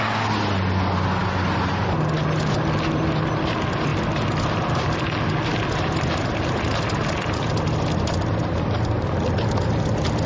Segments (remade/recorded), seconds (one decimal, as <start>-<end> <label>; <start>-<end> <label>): 0.0-10.3 recorded